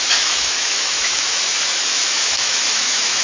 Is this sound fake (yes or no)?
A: yes